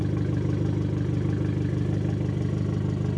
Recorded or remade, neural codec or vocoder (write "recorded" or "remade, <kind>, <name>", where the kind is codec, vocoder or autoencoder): recorded